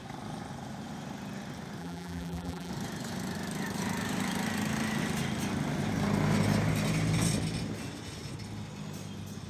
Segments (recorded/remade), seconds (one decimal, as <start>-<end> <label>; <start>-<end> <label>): 0.0-1.8 recorded; 1.8-2.7 remade; 2.7-9.5 recorded